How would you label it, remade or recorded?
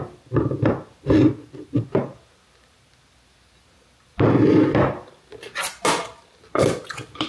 recorded